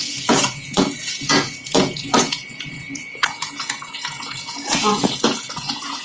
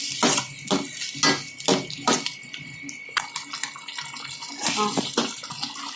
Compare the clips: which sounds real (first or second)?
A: second